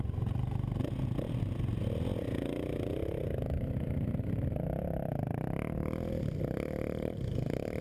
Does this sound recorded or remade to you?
recorded